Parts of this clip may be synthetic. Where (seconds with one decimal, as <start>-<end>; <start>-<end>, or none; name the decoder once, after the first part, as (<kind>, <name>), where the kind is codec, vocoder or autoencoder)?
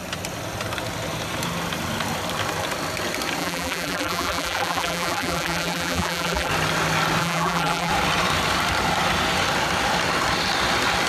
3.4-6.5 (vocoder, BigVGAN v2); 7.2-7.9